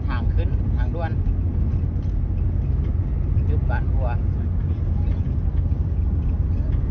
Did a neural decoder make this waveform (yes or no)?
no